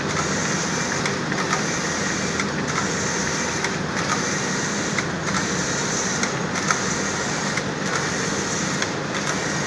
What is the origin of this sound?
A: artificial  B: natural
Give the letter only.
A